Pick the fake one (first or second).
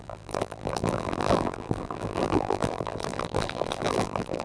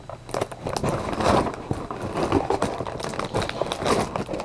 first